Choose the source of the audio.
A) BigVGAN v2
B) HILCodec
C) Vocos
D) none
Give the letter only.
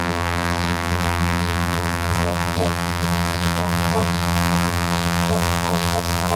A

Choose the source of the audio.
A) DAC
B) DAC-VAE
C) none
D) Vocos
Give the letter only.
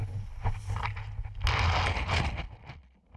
C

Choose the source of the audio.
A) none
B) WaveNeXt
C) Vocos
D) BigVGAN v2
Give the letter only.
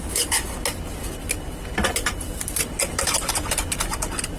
A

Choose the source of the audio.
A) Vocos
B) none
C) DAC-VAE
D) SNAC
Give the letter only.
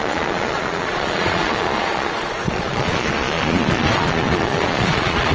A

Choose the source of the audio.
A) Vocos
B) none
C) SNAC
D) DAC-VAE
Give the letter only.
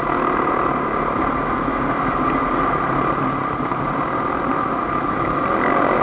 B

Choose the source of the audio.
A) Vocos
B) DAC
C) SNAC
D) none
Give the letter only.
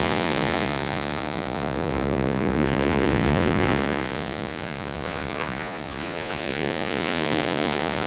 A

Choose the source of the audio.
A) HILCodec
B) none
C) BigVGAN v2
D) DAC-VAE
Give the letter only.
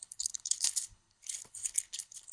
A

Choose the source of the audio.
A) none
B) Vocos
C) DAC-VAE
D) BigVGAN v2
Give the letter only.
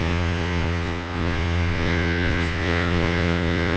B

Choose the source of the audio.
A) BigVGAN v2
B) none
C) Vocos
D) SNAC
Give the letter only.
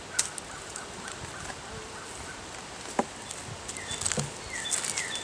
B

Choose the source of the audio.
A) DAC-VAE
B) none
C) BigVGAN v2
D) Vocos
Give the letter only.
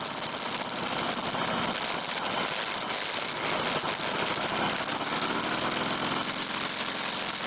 B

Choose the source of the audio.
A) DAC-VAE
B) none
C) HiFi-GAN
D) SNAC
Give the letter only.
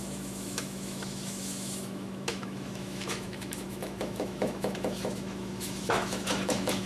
A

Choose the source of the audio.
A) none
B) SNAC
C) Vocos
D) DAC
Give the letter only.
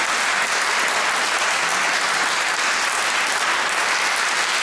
A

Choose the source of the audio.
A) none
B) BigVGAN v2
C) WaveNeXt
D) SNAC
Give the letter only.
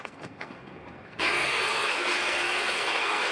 D